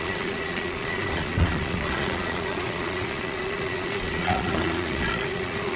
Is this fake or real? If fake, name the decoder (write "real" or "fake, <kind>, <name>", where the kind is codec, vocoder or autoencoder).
fake, vocoder, Vocos